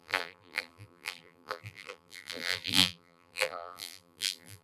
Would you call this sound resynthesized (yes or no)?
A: yes